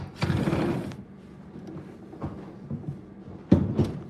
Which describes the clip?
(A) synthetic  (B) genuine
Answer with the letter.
B